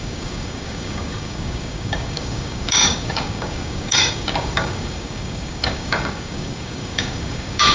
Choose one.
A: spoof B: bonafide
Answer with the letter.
A